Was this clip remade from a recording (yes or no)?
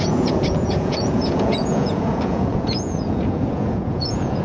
yes